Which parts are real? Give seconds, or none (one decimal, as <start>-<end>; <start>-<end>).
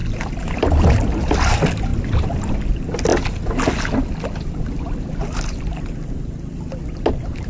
0.0-7.5